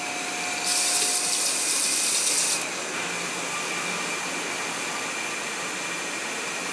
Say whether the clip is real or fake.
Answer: real